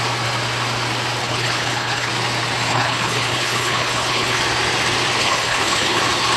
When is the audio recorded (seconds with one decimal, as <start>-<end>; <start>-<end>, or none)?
0.0-1.2; 2.1-2.7; 4.4-5.2; 6.0-6.4